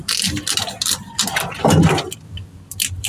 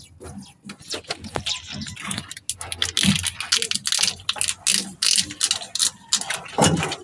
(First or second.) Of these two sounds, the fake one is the first